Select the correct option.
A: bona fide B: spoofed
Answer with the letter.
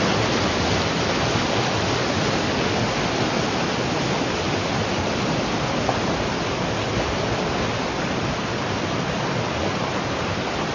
A